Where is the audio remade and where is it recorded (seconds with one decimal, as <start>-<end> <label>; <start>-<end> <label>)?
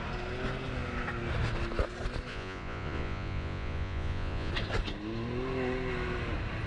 0.0-2.3 recorded; 2.3-4.5 remade; 4.5-6.7 recorded